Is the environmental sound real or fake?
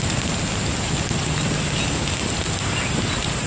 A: real